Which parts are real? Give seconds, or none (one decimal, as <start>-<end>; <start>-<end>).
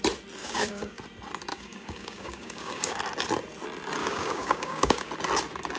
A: 0.0-0.4; 1.0-1.5; 3.0-4.0; 5.1-5.8